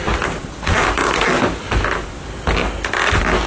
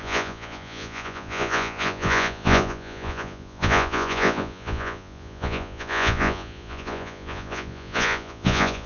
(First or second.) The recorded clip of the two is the first